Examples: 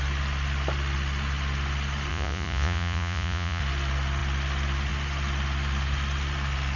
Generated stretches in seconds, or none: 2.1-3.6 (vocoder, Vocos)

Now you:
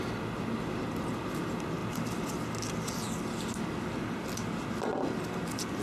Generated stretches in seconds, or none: none

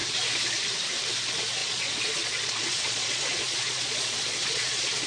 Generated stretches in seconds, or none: 1.6-5.1 (vocoder, Vocos)

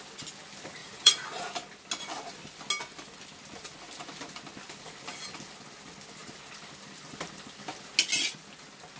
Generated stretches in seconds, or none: 0.8-1.4 (vocoder, Vocos)

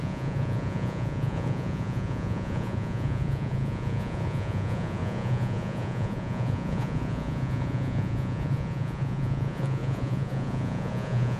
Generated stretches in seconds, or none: 0.0-11.4 (vocoder, Vocos)

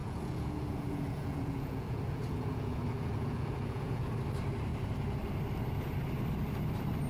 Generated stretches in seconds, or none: 0.0-4.1 (vocoder, Vocos)

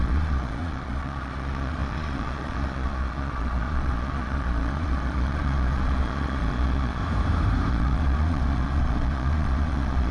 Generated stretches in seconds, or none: 0.0-7.0 (vocoder, Vocos); 7.7-10.1